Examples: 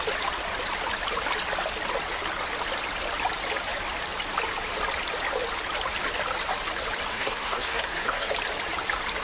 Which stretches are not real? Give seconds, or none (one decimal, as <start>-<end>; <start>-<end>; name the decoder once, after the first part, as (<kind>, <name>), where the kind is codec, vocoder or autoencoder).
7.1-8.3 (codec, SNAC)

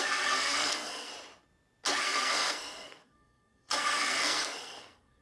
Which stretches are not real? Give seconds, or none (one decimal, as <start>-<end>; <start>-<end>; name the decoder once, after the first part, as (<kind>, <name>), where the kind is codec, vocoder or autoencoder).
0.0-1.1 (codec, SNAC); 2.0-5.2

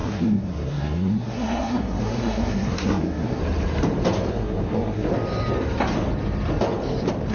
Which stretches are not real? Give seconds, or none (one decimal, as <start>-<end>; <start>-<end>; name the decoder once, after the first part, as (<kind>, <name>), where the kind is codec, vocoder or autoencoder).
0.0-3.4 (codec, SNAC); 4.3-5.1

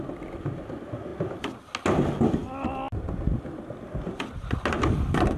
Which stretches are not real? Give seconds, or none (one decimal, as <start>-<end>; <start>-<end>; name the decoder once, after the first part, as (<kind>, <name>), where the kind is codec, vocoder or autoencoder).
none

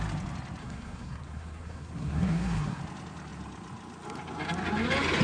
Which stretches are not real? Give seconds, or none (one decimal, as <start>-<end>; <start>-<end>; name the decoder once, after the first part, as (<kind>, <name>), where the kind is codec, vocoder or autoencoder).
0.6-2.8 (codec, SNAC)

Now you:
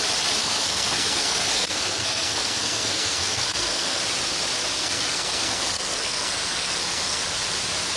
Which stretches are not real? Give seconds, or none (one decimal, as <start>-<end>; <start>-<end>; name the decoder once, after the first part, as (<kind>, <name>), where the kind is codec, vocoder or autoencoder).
0.4-4.0 (codec, SNAC); 4.8-7.2

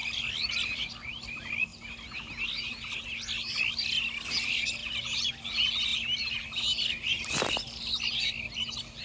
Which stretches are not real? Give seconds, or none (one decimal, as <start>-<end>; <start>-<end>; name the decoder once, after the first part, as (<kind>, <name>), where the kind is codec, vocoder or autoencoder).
none